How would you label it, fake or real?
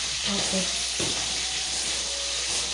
fake